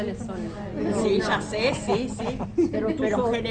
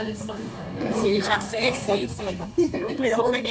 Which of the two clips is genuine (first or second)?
first